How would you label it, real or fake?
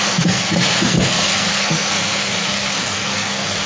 fake